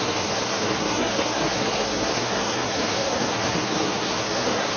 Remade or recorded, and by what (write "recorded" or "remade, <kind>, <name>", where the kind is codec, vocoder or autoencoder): remade, codec, SNAC